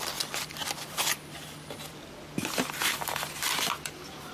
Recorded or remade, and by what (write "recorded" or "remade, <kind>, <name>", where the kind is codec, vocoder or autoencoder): remade, vocoder, BigVGAN v2